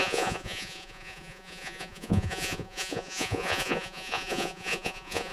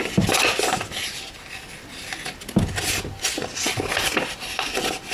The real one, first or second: second